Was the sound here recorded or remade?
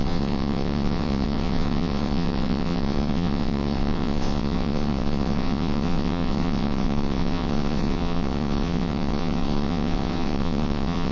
remade